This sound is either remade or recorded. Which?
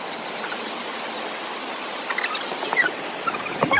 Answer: recorded